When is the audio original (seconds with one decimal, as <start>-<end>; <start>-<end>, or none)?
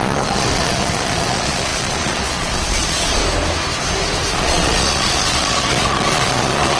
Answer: 3.2-4.3